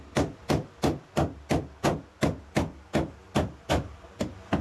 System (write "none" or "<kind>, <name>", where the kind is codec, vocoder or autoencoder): none